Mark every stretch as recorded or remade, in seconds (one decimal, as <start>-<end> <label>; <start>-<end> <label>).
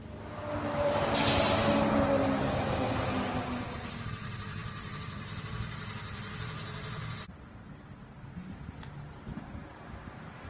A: 0.0-10.5 recorded